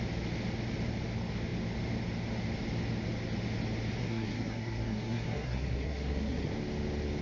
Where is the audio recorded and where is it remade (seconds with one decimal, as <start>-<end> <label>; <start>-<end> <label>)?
0.0-4.0 recorded; 4.0-6.5 remade; 6.5-7.2 recorded